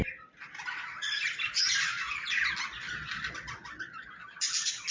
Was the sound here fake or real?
real